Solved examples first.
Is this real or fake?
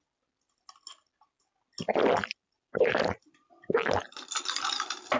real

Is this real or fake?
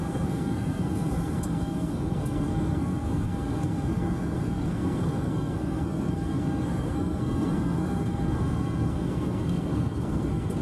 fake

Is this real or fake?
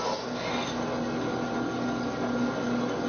real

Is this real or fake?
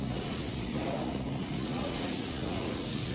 fake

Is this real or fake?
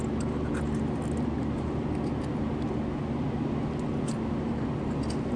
real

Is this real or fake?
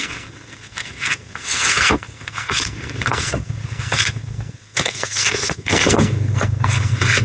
fake